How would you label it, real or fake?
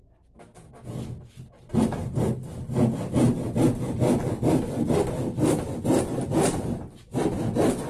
real